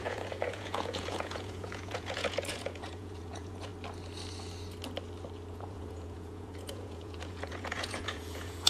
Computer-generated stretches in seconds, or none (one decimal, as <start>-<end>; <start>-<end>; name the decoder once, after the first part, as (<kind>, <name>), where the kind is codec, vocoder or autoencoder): 0.0-3.7 (vocoder, Vocos); 5.5-8.7